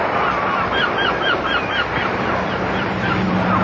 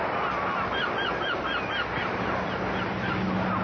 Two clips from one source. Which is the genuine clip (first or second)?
second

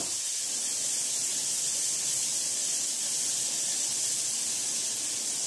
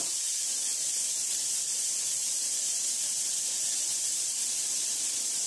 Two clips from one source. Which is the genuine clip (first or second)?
first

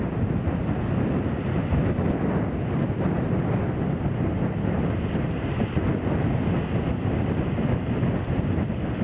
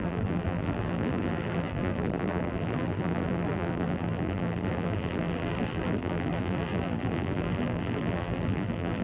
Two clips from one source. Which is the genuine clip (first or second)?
first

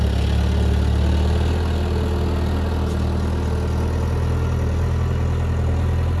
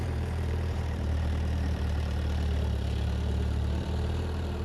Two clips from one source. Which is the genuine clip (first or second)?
first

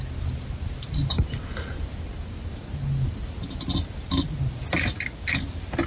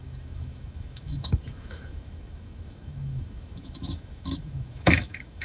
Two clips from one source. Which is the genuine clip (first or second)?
first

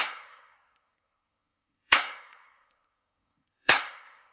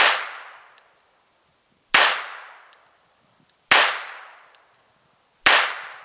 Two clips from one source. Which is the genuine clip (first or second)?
second